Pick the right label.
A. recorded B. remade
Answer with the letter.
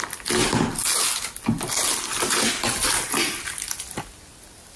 A